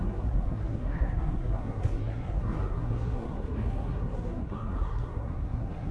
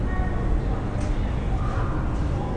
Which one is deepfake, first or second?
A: first